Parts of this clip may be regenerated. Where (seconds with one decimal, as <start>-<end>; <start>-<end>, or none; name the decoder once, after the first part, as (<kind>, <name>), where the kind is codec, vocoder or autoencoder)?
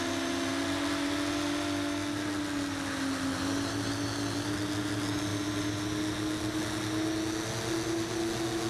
none